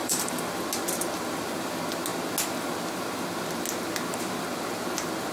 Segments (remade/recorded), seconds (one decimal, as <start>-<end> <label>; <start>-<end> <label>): 0.0-0.5 remade; 0.5-5.3 recorded